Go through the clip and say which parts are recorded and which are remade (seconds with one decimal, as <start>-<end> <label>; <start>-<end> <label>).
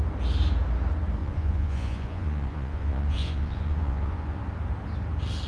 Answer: 0.0-1.2 recorded; 1.2-4.4 remade; 4.4-5.5 recorded